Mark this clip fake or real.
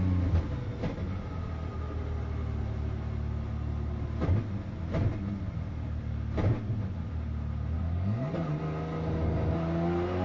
real